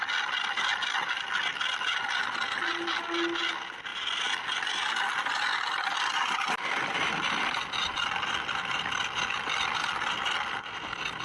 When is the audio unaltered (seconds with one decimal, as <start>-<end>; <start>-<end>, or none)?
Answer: 0.0-11.2